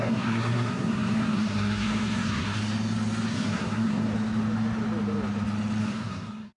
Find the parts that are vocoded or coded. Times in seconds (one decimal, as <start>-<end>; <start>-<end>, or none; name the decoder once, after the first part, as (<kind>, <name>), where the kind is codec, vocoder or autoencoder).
0.0-2.6 (codec, SNAC); 3.3-4.1; 5.8-6.6